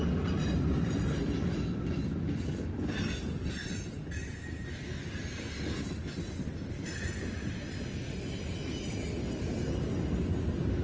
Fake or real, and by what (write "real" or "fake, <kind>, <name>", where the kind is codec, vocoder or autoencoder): real